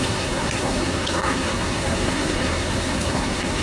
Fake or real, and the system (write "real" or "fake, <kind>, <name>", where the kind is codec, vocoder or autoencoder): fake, codec, SNAC